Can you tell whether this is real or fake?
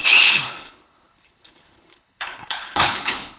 fake